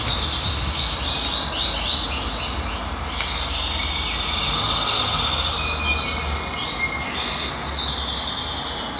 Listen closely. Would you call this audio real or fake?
real